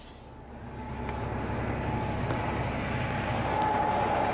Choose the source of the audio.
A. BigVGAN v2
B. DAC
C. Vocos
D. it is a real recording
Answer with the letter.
D